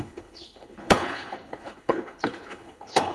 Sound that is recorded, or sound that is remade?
remade